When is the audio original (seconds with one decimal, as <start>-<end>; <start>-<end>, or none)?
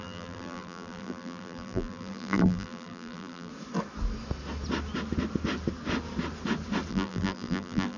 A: 3.5-6.9